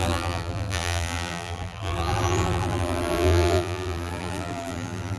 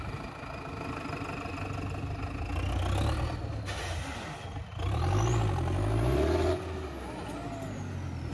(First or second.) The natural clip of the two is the second